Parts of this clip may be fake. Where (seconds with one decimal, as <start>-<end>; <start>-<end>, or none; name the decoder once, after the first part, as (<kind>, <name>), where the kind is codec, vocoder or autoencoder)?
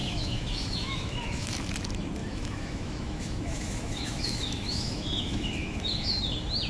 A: 0.0-1.7 (autoencoder, DAC-VAE); 2.2-6.2